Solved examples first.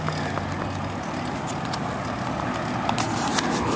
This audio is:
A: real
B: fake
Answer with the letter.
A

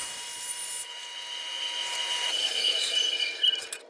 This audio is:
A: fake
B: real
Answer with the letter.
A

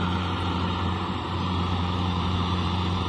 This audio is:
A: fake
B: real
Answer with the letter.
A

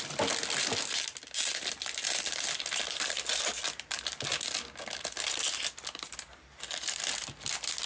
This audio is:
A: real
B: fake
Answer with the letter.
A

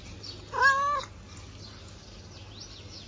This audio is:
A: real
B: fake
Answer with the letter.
A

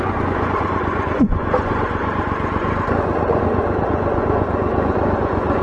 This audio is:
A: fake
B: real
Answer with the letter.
A